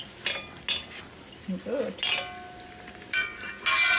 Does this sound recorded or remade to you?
recorded